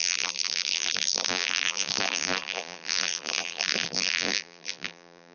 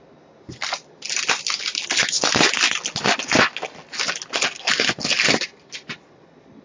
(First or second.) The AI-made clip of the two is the first